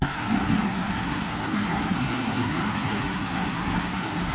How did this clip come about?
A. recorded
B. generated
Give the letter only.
B